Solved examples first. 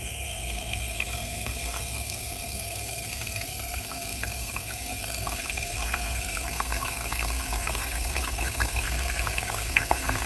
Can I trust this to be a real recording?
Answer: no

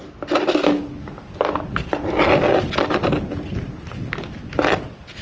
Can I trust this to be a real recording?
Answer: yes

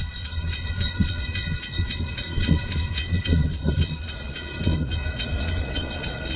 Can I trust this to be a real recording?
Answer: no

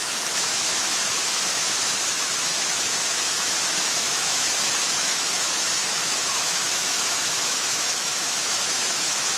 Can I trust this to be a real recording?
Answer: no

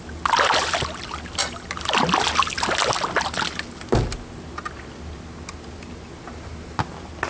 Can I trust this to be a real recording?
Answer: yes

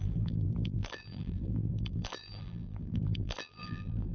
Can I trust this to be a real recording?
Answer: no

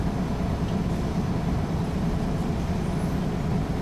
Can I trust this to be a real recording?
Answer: yes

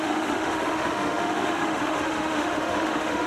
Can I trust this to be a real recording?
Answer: no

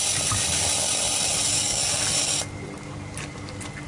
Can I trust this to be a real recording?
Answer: yes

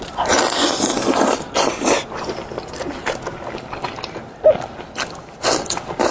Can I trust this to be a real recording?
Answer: yes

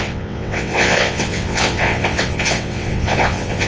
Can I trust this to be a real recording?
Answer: no